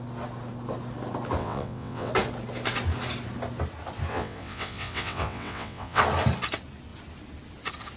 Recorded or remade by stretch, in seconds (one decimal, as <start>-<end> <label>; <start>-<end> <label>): 0.0-1.4 recorded; 1.4-2.1 remade; 2.1-4.1 recorded; 4.1-6.0 remade; 6.0-8.0 recorded